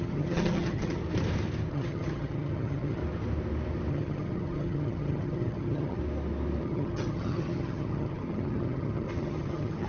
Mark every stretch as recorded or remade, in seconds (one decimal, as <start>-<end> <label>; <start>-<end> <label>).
0.0-1.0 remade; 1.0-1.7 recorded; 1.7-3.0 remade; 3.0-3.9 recorded; 3.9-6.0 remade; 6.0-6.6 recorded; 6.6-9.9 remade